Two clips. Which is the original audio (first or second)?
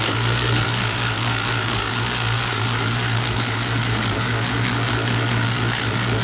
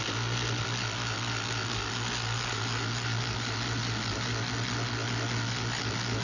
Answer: second